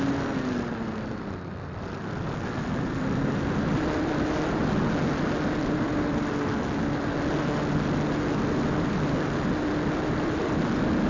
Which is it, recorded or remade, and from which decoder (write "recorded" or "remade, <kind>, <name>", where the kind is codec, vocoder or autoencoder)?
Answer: recorded